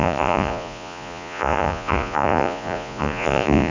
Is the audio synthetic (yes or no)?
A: yes